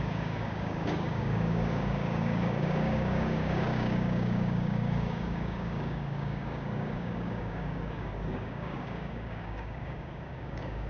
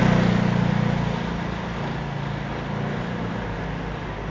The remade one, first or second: first